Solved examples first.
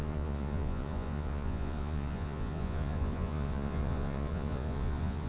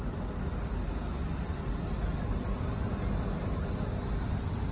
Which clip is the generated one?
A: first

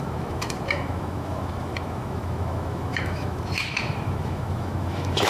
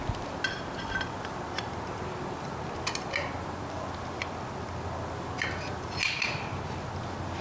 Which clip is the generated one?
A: first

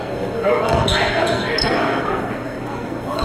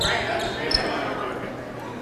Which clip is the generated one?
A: first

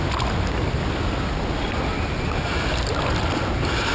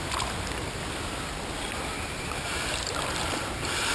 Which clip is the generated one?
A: second